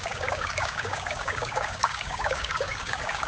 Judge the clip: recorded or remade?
remade